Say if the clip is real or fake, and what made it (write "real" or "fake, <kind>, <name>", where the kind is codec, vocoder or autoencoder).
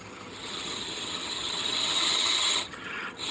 fake, vocoder, HiFi-GAN